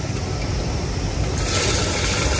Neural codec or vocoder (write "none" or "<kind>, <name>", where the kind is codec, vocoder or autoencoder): none